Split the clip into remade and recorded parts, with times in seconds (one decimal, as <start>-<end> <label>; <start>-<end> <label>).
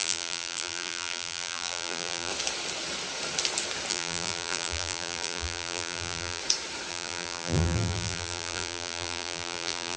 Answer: 0.0-2.3 remade; 2.3-3.9 recorded; 3.9-6.4 remade; 6.4-6.9 recorded; 6.9-10.0 remade